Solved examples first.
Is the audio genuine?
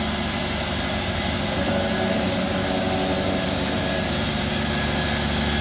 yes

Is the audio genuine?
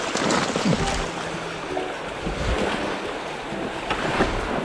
yes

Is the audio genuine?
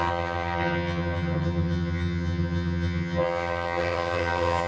no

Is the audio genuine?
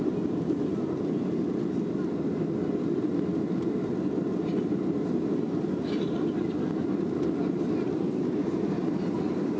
yes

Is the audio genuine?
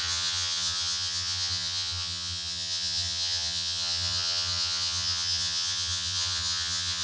no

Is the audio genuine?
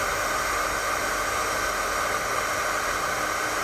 yes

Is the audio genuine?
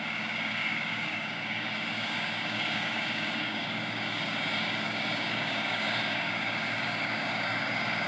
no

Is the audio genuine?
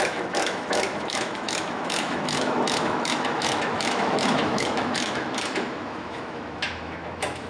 no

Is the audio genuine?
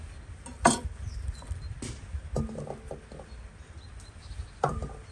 yes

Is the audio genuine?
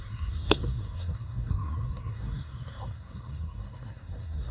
no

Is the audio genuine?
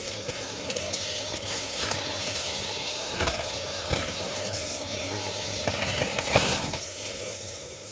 no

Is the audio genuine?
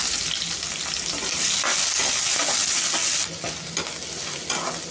yes